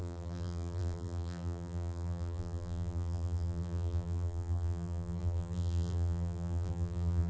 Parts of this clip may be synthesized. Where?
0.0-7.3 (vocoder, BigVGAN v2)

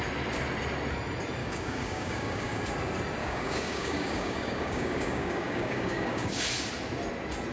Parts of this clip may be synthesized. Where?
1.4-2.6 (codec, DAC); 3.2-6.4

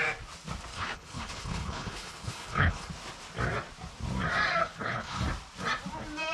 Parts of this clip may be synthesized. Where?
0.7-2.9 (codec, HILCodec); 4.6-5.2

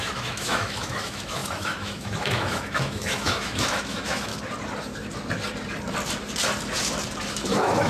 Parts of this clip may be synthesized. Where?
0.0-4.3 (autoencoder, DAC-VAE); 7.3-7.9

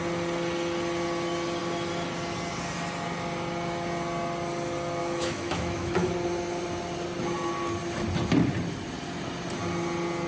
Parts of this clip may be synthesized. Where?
5.0-6.1 (autoencoder, DAC-VAE)

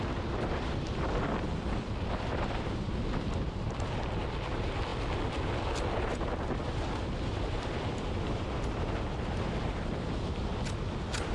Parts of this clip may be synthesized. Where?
0.0-4.9 (vocoder, BigVGAN v2); 6.5-10.5

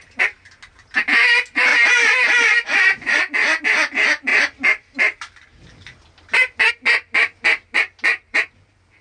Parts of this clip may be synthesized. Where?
1.7-3.2 (vocoder, BigVGAN v2); 8.1-9.0